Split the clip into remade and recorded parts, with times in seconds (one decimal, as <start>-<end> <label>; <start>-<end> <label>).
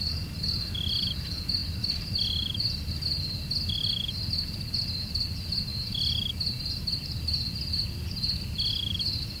0.0-9.4 recorded